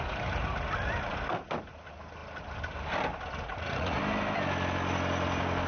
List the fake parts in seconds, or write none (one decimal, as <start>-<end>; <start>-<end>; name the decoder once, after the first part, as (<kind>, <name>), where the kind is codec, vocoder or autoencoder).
3.4-4.0 (vocoder, Vocos)